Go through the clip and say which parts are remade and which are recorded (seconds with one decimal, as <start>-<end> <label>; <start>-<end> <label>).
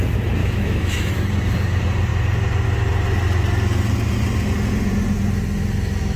0.0-0.4 recorded; 0.4-1.1 remade; 1.1-6.2 recorded